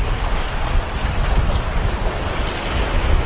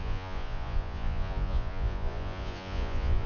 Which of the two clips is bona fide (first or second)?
first